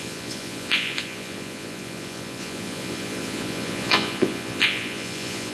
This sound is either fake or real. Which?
fake